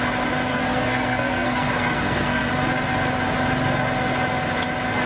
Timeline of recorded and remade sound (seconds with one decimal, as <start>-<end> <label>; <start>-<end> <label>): 0.0-0.5 recorded; 0.5-2.5 remade; 2.5-5.1 recorded